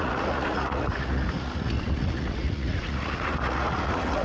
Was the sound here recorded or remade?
remade